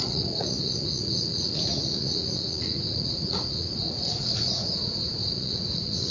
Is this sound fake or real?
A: fake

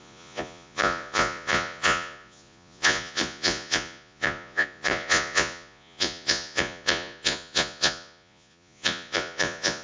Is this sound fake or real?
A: fake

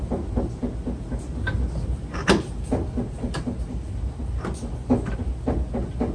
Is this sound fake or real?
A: real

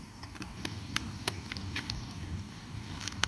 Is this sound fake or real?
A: fake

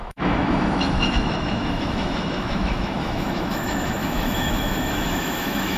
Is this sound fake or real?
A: fake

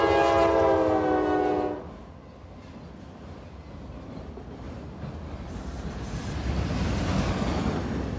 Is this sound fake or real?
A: real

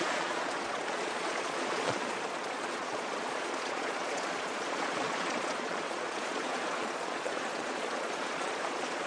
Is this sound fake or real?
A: fake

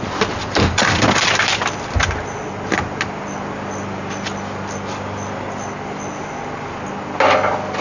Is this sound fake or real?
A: real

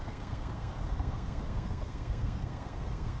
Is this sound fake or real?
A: fake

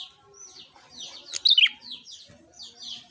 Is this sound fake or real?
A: real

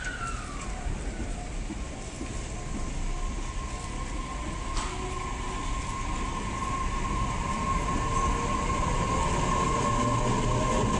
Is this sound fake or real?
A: real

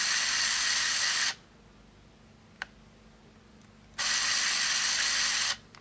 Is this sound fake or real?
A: real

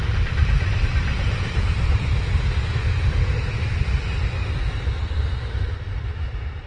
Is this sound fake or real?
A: real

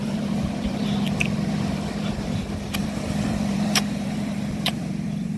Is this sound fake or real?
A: fake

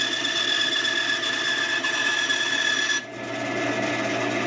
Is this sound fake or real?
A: real